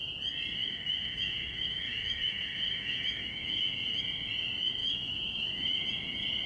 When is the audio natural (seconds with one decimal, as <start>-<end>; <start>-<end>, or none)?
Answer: 0.0-0.6; 4.0-4.8; 5.9-6.5